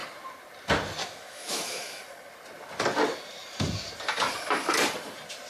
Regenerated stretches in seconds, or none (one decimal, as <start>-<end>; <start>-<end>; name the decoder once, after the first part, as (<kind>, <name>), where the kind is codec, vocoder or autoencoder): 1.0-2.0 (autoencoder, DAC-VAE)